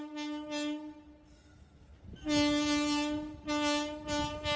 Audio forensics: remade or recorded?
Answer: recorded